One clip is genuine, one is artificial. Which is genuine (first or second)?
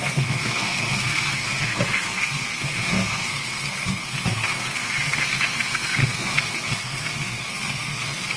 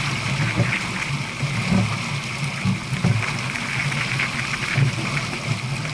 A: second